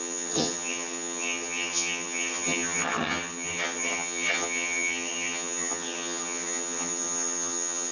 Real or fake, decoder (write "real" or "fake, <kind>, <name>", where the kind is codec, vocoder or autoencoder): fake, vocoder, HiFi-GAN